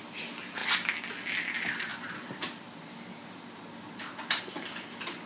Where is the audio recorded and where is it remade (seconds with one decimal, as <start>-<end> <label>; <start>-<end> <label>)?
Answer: 0.0-5.3 recorded